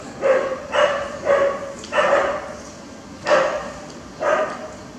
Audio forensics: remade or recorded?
recorded